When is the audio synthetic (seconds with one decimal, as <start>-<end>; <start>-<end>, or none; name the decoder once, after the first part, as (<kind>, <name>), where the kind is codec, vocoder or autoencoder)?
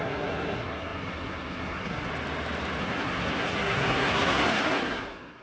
0.0-2.1 (codec, SNAC); 2.8-5.4